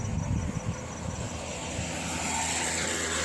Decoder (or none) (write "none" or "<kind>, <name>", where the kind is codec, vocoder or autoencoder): none